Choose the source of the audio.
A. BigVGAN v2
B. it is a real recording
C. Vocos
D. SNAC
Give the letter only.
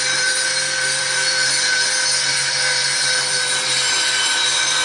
A